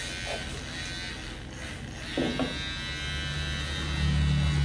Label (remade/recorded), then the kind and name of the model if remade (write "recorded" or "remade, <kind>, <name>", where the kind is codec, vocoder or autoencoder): recorded